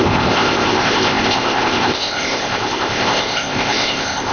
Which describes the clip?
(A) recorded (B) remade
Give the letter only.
B